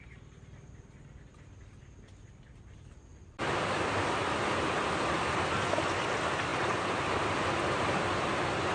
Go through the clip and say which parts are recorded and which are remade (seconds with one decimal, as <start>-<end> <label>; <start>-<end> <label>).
0.0-3.1 recorded; 3.1-5.8 remade; 5.8-6.5 recorded; 6.5-7.4 remade; 7.4-8.7 recorded